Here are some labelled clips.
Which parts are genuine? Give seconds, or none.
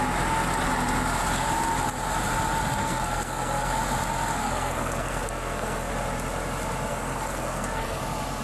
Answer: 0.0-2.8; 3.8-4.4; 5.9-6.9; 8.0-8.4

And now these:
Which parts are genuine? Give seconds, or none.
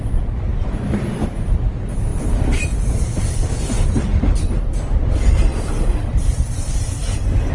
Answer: none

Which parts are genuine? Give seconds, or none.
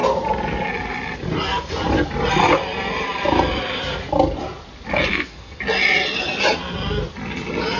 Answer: 0.0-5.1; 5.6-7.8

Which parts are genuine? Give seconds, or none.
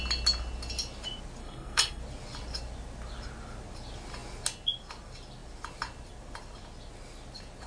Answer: 0.0-1.4; 2.0-7.7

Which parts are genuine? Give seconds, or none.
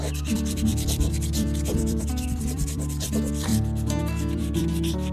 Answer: 3.5-4.0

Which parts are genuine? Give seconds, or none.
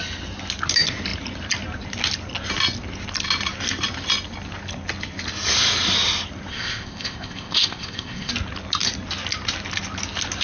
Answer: 0.0-6.5; 8.3-10.4